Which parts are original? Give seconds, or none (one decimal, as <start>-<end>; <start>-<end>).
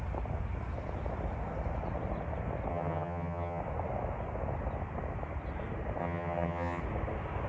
0.0-2.7; 3.6-6.0; 6.8-7.5